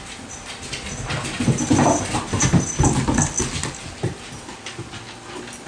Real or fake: real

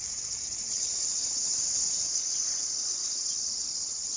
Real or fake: fake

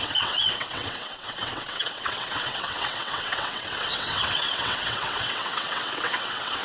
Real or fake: fake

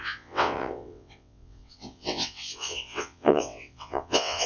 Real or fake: fake